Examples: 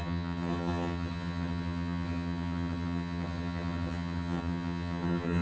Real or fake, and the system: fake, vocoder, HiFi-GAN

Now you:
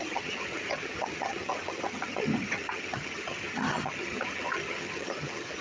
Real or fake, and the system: fake, vocoder, HiFi-GAN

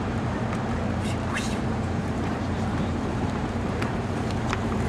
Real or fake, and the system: fake, vocoder, BigVGAN v2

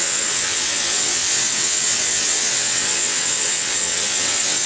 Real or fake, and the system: fake, vocoder, WaveNeXt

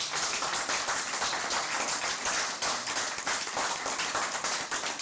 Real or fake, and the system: real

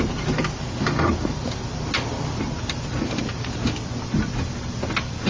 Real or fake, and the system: real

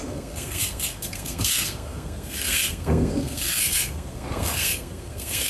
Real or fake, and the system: fake, codec, SNAC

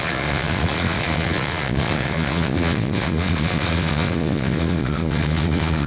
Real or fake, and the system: fake, vocoder, Vocos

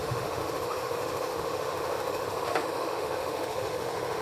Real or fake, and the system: fake, autoencoder, DAC-VAE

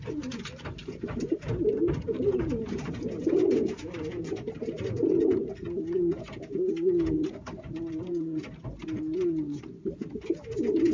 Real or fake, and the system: fake, vocoder, BigVGAN v2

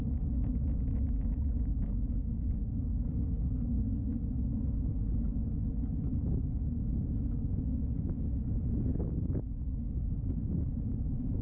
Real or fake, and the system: fake, autoencoder, DAC-VAE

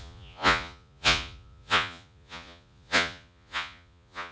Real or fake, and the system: fake, vocoder, Vocos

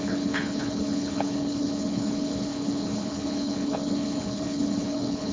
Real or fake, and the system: fake, codec, HILCodec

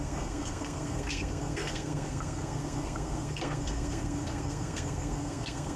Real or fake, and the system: fake, codec, SNAC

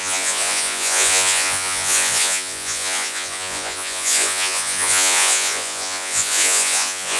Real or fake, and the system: fake, vocoder, Vocos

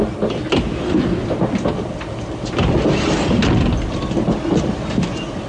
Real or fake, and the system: real